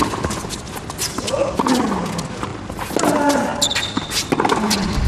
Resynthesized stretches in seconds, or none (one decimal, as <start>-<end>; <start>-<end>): none